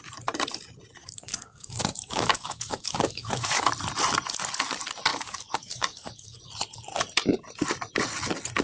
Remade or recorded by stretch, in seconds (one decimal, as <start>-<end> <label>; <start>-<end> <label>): 0.0-1.0 recorded; 1.0-3.7 remade; 3.7-5.1 recorded; 5.1-6.4 remade; 6.4-8.6 recorded